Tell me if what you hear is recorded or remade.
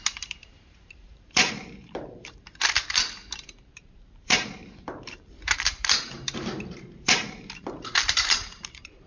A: remade